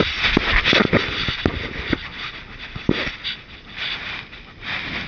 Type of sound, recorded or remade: recorded